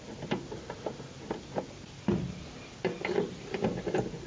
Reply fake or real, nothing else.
real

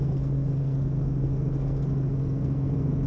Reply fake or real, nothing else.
fake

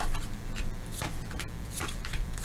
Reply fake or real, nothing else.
fake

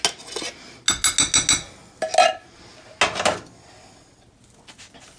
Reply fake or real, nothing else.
real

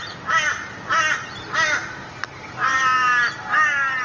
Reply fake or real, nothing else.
real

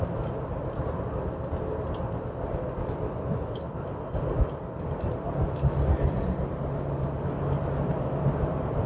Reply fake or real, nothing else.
real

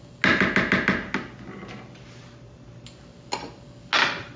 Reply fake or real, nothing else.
real